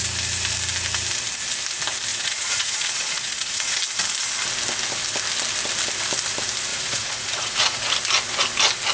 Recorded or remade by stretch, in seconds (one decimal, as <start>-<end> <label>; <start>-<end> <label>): 0.0-2.1 recorded; 2.1-3.8 remade; 3.8-6.7 recorded; 6.7-7.8 remade; 7.8-8.9 recorded